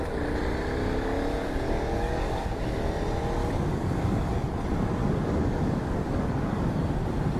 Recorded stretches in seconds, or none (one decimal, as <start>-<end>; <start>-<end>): 0.0-1.4; 2.6-3.4; 4.5-5.0; 6.9-7.4